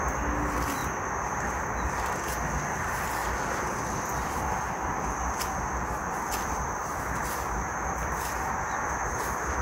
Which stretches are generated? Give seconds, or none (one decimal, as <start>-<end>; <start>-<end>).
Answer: 6.8-7.3